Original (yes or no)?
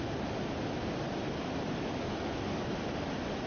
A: yes